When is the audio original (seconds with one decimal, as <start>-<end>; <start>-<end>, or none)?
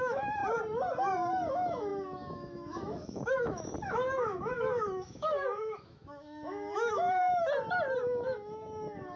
0.4-1.5; 7.2-8.0